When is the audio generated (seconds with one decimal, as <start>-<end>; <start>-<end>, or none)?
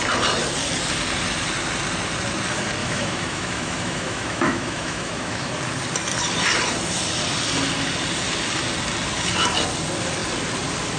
2.8-5.5